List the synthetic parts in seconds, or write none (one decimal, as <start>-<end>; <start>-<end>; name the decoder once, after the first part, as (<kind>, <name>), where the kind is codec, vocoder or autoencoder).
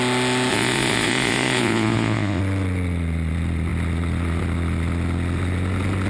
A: 0.5-2.4 (vocoder, Vocos)